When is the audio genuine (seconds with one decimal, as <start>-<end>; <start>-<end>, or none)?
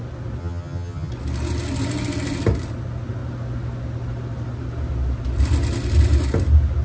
0.0-0.4; 1.1-6.8